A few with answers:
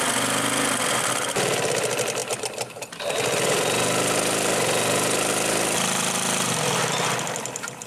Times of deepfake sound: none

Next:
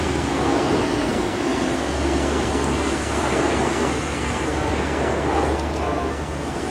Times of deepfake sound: 0.0-6.7

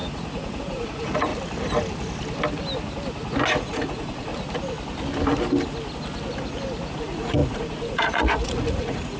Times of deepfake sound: 0.0-1.3; 3.6-4.3; 6.9-9.2